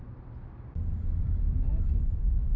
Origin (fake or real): real